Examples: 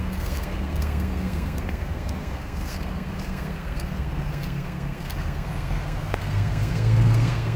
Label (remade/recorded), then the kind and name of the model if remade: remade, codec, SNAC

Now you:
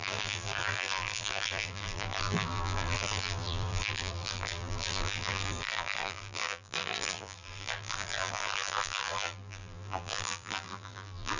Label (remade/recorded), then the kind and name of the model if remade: remade, vocoder, BigVGAN v2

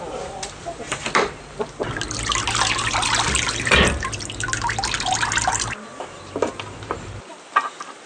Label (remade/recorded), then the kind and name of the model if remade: recorded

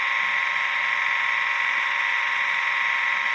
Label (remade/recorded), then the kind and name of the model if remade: recorded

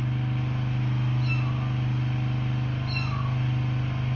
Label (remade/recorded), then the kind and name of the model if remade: recorded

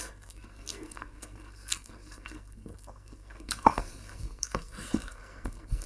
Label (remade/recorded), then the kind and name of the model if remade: remade, codec, SNAC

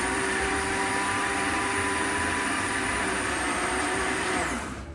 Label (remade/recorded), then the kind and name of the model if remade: remade, vocoder, BigVGAN v2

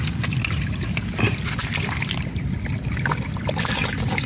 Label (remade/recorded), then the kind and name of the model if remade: recorded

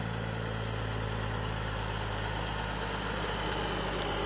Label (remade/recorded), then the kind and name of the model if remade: recorded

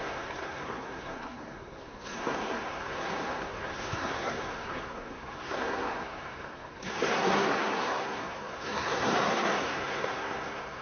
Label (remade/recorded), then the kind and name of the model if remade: remade, codec, SNAC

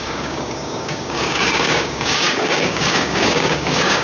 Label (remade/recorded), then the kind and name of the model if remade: remade, codec, DAC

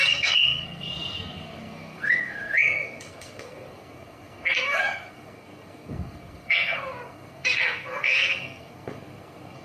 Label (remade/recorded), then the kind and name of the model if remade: remade, codec, SNAC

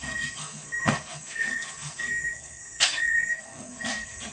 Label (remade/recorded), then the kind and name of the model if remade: remade, codec, SNAC